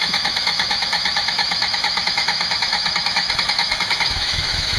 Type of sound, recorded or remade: remade